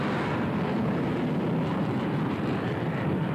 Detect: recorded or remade remade